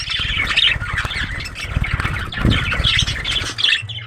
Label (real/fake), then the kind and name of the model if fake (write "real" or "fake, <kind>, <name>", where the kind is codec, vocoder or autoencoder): real